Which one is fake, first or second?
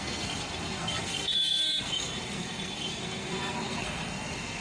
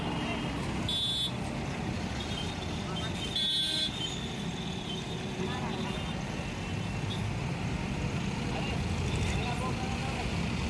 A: first